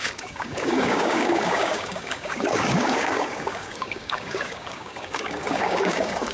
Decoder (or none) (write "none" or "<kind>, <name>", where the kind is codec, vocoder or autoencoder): codec, DAC